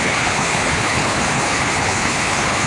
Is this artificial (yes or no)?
yes